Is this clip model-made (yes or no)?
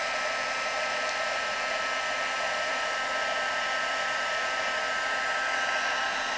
no